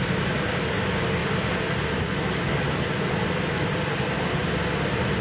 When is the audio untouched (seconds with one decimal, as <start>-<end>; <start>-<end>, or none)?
0.0-5.2